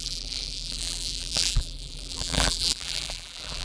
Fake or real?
fake